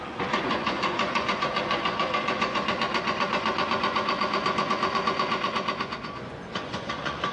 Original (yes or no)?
no